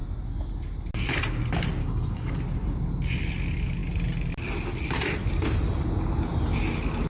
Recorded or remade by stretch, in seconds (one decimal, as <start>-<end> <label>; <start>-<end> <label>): 0.0-1.8 recorded; 1.8-2.4 remade; 2.4-7.1 recorded